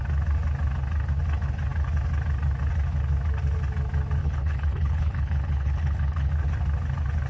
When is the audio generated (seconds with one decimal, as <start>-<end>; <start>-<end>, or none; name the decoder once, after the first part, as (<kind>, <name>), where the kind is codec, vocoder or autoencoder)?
4.2-6.3 (codec, HILCodec)